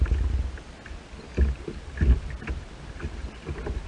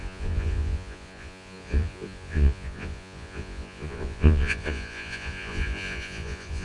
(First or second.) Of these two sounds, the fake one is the second